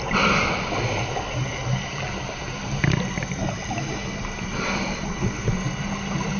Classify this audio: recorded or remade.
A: recorded